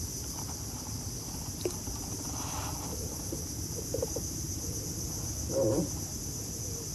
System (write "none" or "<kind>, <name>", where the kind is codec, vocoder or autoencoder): none